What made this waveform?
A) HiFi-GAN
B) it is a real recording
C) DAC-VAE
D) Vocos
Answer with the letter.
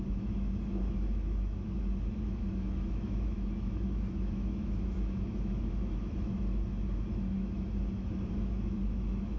C